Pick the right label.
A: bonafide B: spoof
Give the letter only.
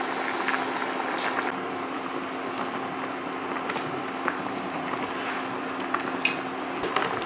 A